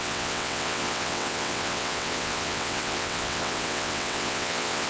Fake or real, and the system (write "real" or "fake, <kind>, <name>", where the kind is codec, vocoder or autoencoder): fake, vocoder, WaveNeXt